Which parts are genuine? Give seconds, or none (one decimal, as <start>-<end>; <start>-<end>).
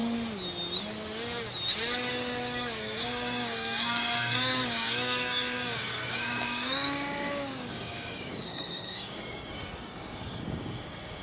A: 0.0-2.1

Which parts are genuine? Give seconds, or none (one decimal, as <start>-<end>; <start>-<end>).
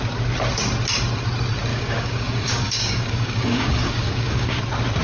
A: 0.0-1.7; 4.6-5.0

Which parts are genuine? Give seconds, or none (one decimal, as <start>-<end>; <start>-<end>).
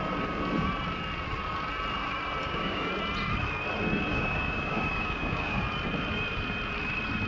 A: 0.0-2.4; 2.9-4.1; 5.6-7.3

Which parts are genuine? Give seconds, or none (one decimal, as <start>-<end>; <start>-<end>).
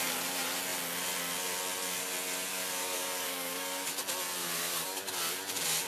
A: 0.0-2.5; 4.0-4.4; 5.1-5.9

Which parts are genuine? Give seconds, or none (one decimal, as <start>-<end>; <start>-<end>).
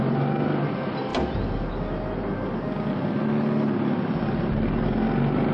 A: 0.0-5.5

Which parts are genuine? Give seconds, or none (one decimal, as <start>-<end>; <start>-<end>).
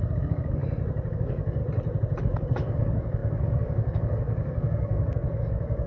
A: 0.6-1.1; 1.6-2.2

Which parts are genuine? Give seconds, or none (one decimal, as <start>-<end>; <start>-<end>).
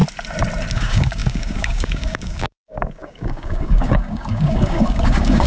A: 0.0-0.7